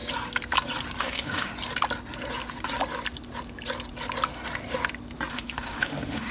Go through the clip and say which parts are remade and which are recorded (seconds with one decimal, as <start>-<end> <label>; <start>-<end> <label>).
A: 0.0-1.0 recorded; 1.0-1.5 remade; 1.5-5.3 recorded; 5.3-6.3 remade